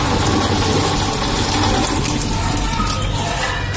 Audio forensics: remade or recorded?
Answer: recorded